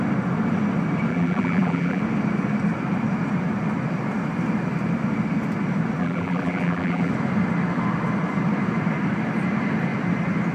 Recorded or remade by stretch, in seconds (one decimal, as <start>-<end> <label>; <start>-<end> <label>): 0.0-1.1 recorded; 1.1-2.0 remade; 2.0-6.0 recorded; 6.0-7.1 remade; 7.1-10.5 recorded